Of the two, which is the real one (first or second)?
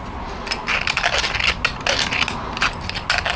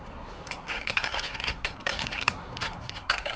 first